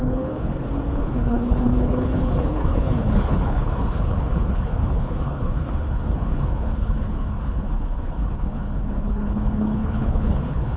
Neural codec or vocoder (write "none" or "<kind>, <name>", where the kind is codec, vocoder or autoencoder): codec, HILCodec